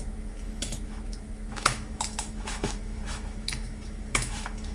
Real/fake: fake